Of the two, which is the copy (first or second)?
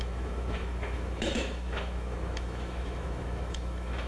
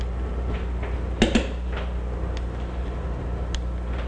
first